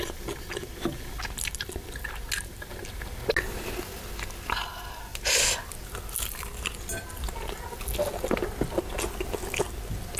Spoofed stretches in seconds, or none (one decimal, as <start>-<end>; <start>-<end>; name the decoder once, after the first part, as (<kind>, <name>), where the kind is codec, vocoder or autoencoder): none